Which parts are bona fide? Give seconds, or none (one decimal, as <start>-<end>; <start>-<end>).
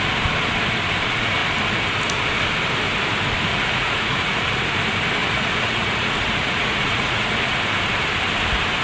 0.0-3.5; 4.7-5.2; 7.6-8.8